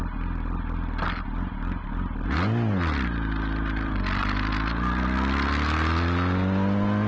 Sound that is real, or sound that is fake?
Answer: real